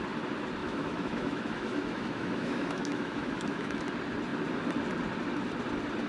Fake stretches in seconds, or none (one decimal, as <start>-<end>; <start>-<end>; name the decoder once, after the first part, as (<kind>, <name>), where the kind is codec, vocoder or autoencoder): 0.6-3.8 (autoencoder, DAC-VAE)